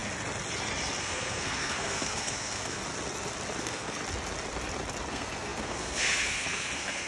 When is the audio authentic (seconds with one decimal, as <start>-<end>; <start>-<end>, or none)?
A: 0.0-1.0; 2.8-3.6; 4.0-5.1